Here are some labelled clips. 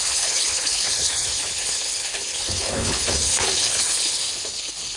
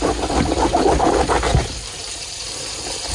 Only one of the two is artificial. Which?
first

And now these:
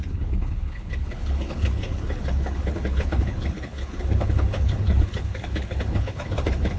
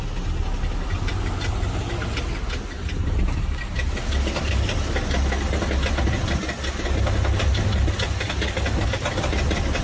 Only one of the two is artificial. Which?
first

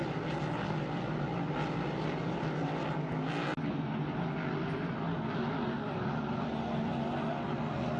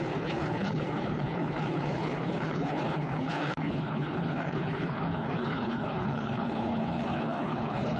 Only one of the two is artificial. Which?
second